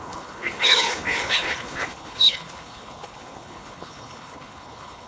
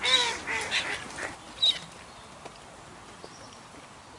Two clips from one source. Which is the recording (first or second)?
second